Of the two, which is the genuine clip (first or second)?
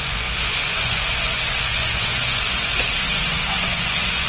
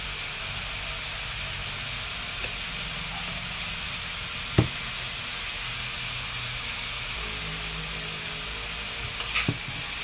second